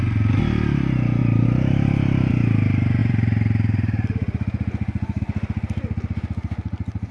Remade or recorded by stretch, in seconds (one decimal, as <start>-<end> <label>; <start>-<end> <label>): 0.0-1.2 recorded; 1.2-2.3 remade; 2.3-3.0 recorded; 3.0-5.2 remade; 5.2-7.1 recorded